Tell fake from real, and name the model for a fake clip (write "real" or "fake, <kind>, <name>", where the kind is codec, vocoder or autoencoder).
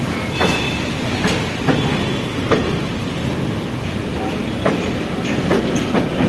real